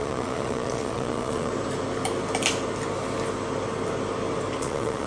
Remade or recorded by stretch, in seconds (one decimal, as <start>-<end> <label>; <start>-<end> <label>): 0.0-1.5 remade; 1.5-4.6 recorded; 4.6-5.1 remade